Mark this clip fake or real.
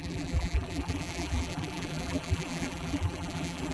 fake